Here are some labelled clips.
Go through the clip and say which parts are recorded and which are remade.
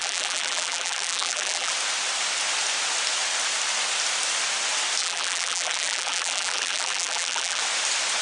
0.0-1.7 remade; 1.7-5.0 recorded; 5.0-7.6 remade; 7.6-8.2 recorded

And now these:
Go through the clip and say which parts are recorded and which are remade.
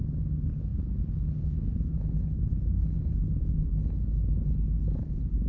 0.0-5.5 recorded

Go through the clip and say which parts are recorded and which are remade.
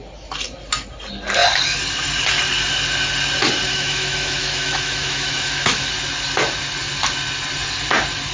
0.0-3.7 recorded; 3.7-5.9 remade; 5.9-8.3 recorded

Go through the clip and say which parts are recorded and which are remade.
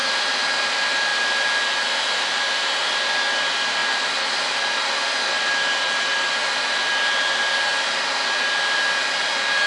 0.0-0.6 remade; 0.6-3.8 recorded; 3.8-6.3 remade; 6.3-9.7 recorded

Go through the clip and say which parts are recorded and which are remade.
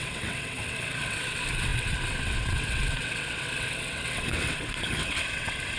0.0-5.8 remade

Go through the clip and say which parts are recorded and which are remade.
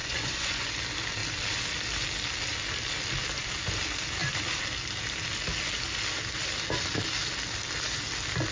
0.0-0.7 remade; 0.7-8.5 recorded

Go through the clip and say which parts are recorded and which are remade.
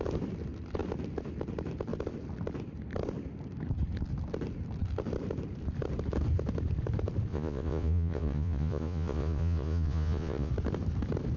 0.0-7.3 recorded; 7.3-10.5 remade; 10.5-11.4 recorded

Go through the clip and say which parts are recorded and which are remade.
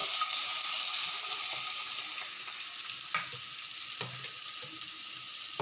0.0-5.6 recorded